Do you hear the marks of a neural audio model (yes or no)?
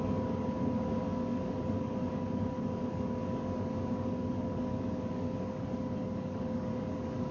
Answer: yes